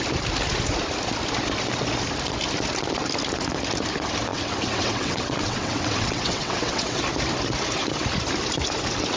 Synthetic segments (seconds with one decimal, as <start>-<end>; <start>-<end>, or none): 4.3-7.0